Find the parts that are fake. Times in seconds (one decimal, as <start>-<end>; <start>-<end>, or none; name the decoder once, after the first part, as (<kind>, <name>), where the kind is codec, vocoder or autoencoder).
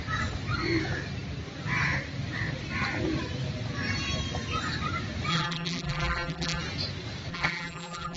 5.3-6.6 (vocoder, BigVGAN v2); 7.3-8.2